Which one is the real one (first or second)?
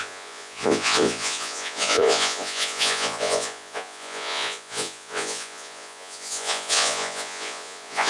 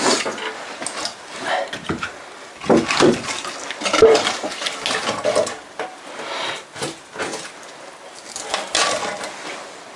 second